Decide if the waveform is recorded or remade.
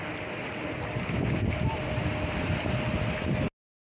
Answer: recorded